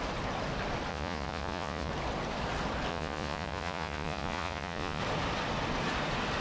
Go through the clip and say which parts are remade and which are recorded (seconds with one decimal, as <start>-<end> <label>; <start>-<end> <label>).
0.0-0.9 recorded; 0.9-1.9 remade; 1.9-2.9 recorded; 2.9-5.0 remade; 5.0-6.4 recorded